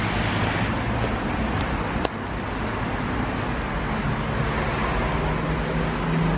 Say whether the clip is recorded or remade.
recorded